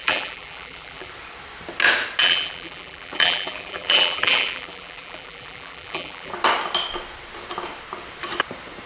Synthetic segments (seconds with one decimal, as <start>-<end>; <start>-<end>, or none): 0.0-1.1; 2.2-6.3